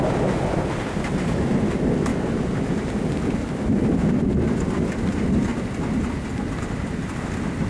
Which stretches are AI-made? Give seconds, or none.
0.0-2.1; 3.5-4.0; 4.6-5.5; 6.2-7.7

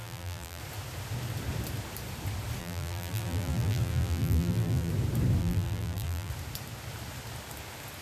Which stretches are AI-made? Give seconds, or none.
0.0-0.6; 2.6-4.9; 5.4-6.3

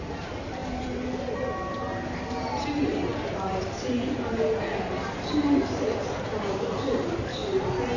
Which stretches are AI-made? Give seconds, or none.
0.0-7.4

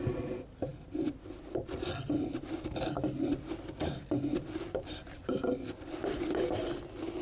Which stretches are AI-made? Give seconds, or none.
none